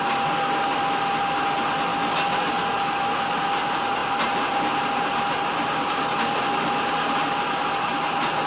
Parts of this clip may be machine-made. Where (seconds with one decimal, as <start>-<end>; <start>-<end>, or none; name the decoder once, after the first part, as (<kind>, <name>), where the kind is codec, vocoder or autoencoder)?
none